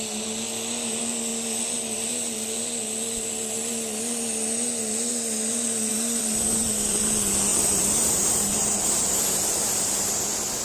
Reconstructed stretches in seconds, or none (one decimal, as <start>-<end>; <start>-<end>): 5.9-7.0; 7.5-10.1